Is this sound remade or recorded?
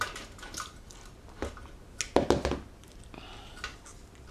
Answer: recorded